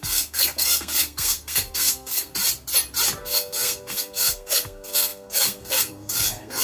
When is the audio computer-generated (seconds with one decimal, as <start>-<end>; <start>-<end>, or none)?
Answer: 0.0-2.3; 3.2-6.6